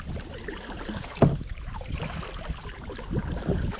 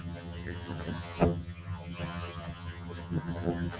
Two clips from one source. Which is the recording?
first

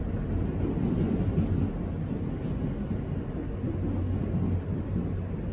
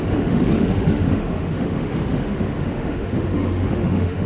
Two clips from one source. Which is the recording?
first